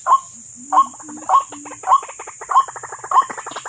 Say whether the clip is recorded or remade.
recorded